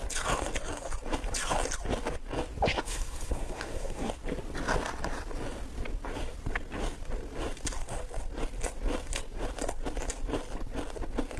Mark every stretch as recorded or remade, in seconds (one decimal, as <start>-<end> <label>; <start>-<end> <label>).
0.0-2.7 recorded; 2.7-4.1 remade; 4.1-11.4 recorded